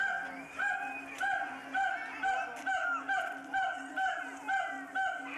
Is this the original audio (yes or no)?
yes